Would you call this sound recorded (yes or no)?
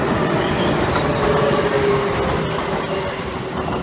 yes